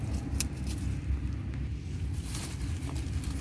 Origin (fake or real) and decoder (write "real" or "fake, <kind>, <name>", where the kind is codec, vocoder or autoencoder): real